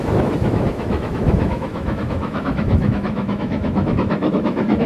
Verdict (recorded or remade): remade